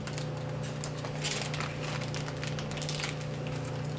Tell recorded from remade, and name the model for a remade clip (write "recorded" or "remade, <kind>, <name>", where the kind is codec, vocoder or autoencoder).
recorded